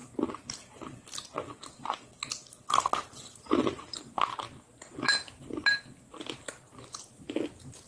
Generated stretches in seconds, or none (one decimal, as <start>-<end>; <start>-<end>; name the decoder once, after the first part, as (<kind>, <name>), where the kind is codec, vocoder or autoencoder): none